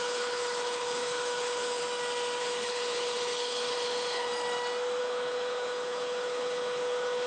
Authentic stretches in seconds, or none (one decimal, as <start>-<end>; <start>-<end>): 1.8-2.4; 4.3-5.0